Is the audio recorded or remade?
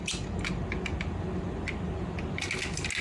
recorded